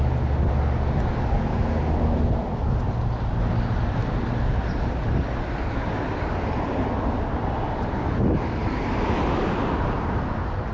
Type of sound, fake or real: real